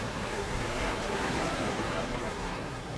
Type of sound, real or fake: fake